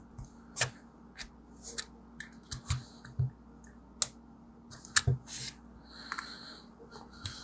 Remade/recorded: recorded